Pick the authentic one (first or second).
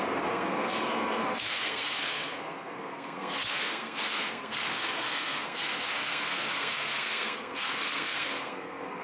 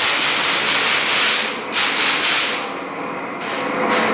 second